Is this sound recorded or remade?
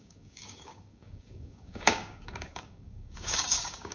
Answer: remade